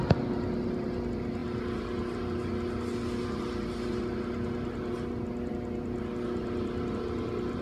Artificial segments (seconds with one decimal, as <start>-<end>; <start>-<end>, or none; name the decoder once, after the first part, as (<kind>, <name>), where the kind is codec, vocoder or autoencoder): none